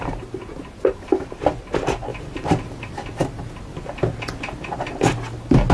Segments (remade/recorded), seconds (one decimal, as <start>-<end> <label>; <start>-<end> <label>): 0.0-5.7 recorded